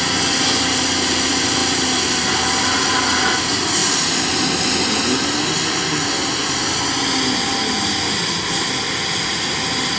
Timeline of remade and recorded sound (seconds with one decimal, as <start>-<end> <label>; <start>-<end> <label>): 0.0-10.0 recorded